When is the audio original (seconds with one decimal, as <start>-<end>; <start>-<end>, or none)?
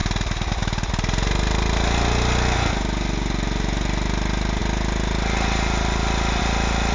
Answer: 0.0-6.9